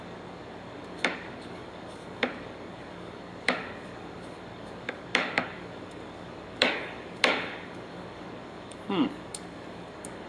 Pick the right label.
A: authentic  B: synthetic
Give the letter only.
B